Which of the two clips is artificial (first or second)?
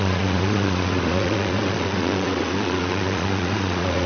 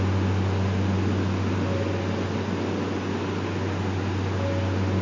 first